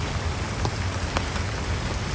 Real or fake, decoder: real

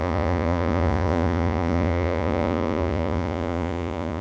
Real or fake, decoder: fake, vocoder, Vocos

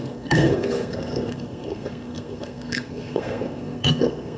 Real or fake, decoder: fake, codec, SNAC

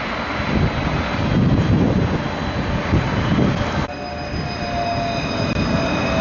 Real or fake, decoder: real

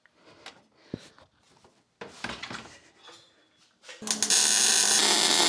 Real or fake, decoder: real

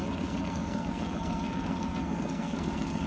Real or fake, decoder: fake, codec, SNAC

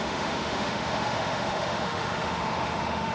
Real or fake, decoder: fake, autoencoder, DAC-VAE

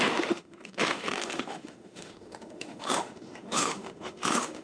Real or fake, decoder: fake, autoencoder, DAC-VAE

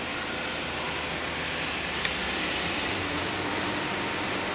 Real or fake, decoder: real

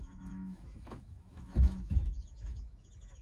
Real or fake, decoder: fake, autoencoder, DAC-VAE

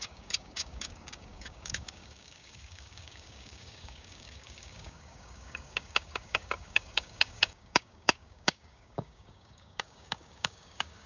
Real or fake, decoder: fake, codec, DAC